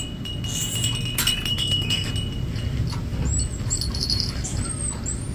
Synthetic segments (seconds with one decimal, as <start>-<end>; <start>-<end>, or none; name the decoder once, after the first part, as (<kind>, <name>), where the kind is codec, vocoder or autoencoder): 1.5-2.1 (codec, SNAC)